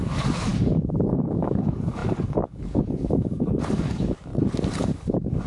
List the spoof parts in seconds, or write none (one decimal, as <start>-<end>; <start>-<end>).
0.0-4.3; 4.8-5.5